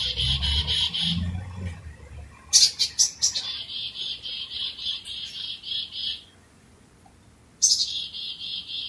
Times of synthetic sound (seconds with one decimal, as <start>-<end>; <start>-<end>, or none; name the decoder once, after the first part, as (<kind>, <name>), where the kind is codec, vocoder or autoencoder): 6.0-6.9 (vocoder, Vocos)